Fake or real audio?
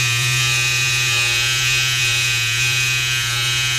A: fake